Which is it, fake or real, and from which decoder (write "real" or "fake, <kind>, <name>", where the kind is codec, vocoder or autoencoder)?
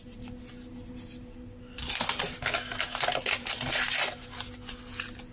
real